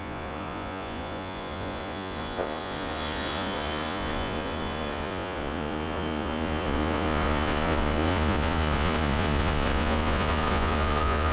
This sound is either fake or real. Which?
fake